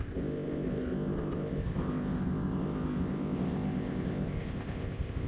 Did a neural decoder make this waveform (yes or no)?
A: yes